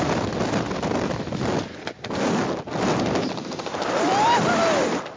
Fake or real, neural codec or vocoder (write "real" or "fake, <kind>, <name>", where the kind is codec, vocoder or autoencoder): fake, vocoder, BigVGAN v2